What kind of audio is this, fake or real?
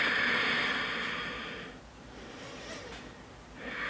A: real